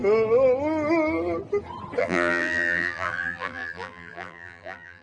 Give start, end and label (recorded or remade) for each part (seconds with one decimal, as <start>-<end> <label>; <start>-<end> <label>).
0.0-2.0 recorded; 2.0-5.0 remade